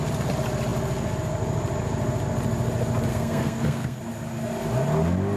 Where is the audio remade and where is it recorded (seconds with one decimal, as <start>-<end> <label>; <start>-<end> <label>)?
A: 0.0-3.1 recorded; 3.1-4.0 remade; 4.0-5.4 recorded